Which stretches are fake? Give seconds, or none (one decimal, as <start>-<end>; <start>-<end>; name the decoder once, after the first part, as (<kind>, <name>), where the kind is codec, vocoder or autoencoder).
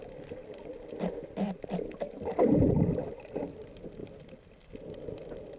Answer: none